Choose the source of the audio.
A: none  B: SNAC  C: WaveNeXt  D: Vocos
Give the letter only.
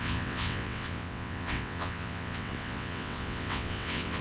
C